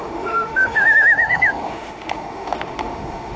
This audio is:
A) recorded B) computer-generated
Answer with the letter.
B